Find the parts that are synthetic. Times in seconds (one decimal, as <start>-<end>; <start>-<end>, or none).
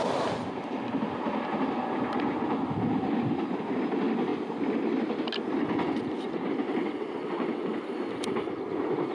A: 6.7-7.7